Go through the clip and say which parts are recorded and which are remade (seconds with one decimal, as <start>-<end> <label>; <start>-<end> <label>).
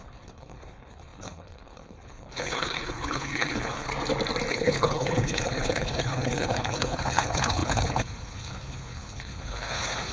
0.0-3.9 remade; 3.9-4.5 recorded; 4.5-10.1 remade